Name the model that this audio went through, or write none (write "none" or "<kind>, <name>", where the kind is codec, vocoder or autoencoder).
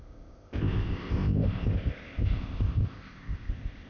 codec, ZipCodec